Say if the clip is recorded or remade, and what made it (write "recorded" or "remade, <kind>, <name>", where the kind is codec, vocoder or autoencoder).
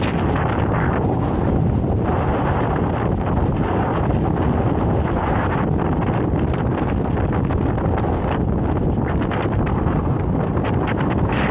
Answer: recorded